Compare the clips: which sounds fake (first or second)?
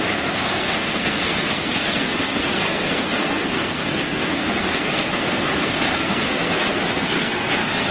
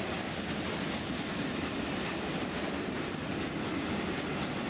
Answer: first